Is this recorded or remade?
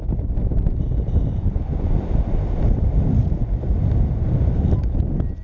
remade